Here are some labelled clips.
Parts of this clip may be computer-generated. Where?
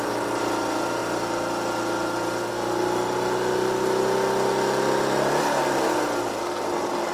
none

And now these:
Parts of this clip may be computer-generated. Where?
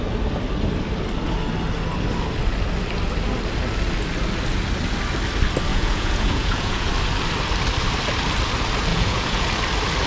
5.7-6.9 (vocoder, Vocos); 8.9-9.5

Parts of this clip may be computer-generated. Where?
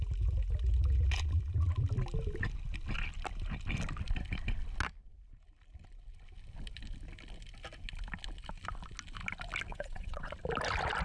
9.7-10.3 (vocoder, WaveNeXt)